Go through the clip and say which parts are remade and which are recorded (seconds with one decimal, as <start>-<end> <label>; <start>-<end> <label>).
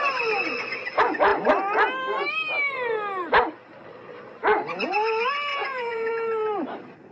0.0-5.5 recorded; 5.5-6.1 remade; 6.1-7.1 recorded